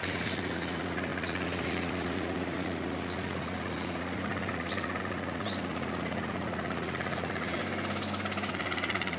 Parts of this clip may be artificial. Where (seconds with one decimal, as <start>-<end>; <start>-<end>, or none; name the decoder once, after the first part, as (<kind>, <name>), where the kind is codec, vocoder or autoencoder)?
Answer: 0.0-7.6 (vocoder, Vocos); 8.5-9.2